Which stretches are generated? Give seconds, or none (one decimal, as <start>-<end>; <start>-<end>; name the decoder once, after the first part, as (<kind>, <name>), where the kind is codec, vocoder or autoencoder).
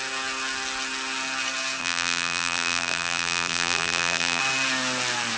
1.8-4.4 (vocoder, BigVGAN v2)